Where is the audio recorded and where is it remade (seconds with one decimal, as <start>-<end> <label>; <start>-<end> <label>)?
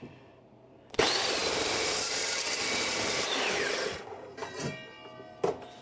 0.0-1.4 recorded; 1.4-3.7 remade; 3.7-5.8 recorded